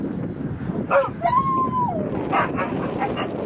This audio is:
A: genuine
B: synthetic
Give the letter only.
A